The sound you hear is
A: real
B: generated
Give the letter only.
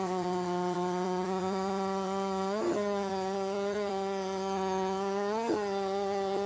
B